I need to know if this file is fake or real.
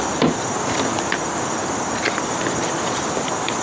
real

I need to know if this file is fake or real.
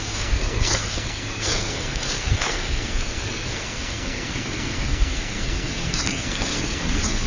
fake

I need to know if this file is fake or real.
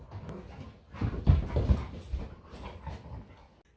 real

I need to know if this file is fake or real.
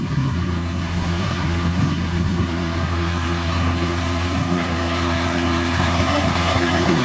fake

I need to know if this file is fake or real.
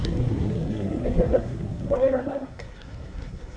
fake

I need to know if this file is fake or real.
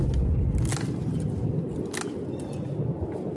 real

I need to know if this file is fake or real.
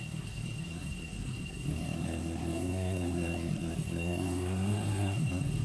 fake